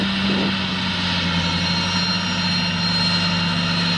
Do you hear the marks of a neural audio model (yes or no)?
no